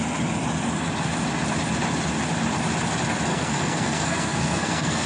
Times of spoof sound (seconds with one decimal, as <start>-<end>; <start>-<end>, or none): 3.3-5.1